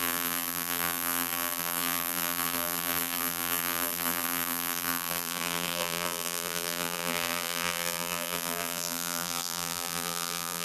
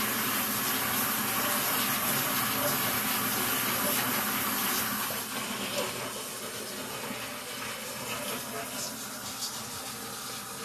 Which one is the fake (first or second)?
first